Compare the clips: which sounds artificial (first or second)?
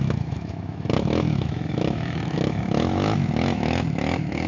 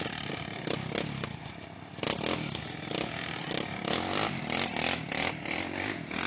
first